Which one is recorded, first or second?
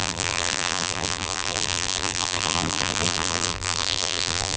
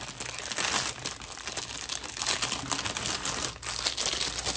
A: second